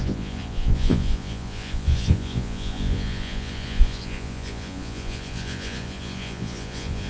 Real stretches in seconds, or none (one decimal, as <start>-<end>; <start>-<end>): none